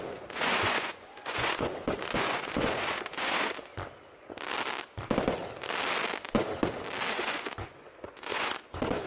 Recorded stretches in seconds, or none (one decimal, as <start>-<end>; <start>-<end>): 3.7-7.1